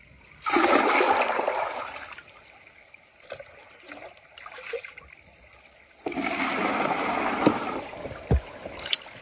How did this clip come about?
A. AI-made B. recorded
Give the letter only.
B